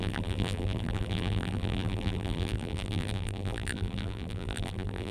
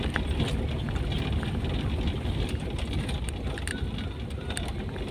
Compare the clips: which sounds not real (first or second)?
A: first